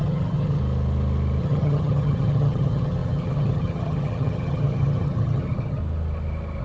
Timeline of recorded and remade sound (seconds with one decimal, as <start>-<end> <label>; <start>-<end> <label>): 0.0-0.6 remade; 0.6-1.4 recorded; 1.4-5.8 remade; 5.8-6.6 recorded